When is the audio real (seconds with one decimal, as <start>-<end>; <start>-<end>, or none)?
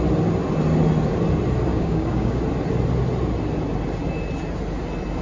0.0-1.7; 2.4-5.2